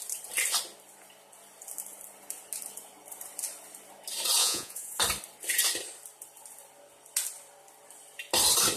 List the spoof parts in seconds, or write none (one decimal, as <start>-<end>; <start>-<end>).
4.4-5.0